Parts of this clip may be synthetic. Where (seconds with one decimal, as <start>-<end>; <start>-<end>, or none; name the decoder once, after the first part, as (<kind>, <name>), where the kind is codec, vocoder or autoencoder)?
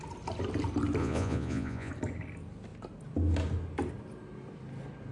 1.0-1.9 (vocoder, Vocos)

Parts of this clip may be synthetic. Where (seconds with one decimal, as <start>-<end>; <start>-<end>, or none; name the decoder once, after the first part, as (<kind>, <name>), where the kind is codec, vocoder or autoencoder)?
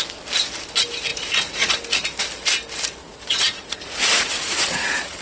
1.1-1.7 (vocoder, Vocos); 3.0-5.2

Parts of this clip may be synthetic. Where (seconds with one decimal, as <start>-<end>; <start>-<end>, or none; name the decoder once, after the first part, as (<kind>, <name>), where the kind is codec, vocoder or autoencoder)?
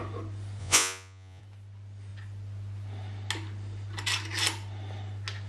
0.6-1.4 (vocoder, Vocos)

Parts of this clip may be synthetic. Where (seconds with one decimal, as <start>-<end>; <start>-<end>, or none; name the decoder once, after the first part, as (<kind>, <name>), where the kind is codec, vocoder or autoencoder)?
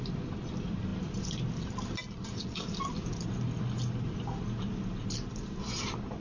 none